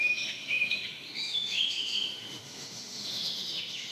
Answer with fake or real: fake